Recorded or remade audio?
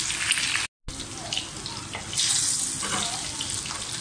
recorded